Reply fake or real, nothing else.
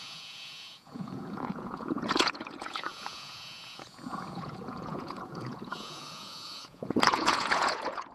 fake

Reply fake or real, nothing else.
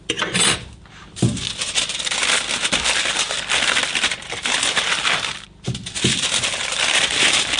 real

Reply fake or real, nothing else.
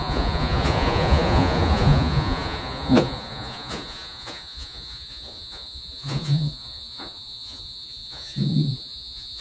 fake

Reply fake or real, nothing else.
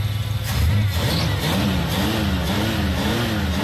real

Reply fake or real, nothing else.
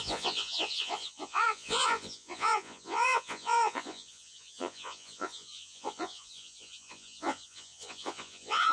fake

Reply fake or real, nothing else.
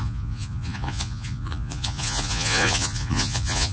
fake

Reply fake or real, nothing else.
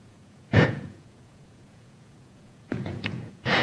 fake